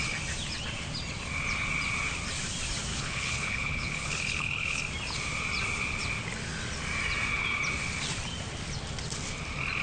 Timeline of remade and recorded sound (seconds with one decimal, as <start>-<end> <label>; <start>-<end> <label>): 0.0-2.9 recorded; 2.9-4.8 remade; 4.8-9.8 recorded